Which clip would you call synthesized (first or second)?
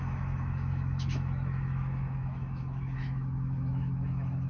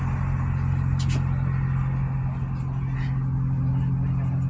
first